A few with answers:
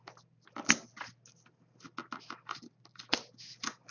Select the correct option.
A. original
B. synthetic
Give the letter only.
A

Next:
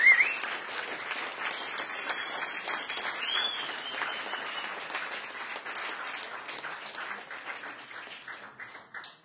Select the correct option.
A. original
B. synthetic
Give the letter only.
A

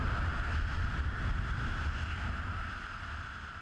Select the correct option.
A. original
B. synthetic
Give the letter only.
A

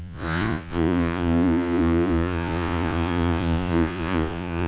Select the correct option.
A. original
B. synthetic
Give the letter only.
B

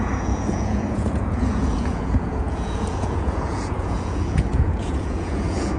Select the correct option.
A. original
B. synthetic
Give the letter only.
B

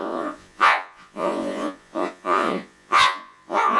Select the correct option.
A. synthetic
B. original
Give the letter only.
A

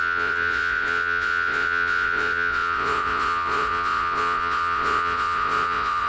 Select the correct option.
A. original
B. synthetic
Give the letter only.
B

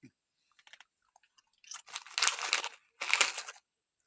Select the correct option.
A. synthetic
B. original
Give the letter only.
B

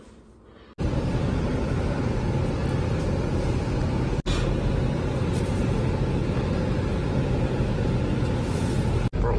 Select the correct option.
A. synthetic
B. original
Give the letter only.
B